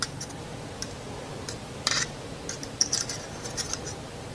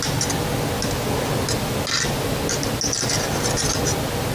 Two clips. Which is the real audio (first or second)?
second